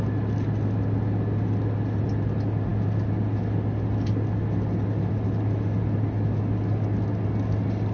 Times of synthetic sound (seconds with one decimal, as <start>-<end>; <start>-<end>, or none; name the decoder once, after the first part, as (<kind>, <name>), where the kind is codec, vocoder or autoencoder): none